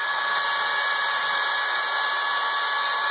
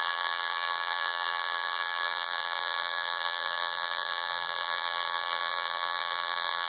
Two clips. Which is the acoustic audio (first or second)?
first